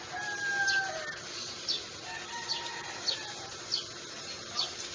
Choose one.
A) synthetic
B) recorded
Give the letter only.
B